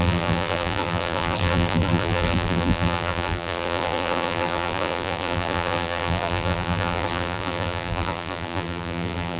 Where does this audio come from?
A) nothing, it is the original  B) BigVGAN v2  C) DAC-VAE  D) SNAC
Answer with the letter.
B